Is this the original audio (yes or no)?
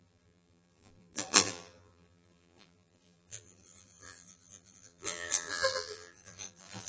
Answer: no